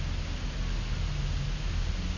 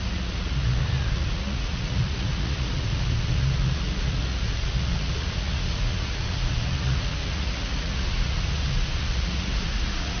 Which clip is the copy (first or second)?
second